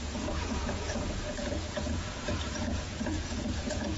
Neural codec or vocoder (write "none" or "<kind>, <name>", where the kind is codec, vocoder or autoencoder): vocoder, Vocos